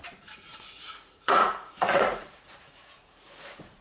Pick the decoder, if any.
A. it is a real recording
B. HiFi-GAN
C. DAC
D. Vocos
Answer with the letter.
D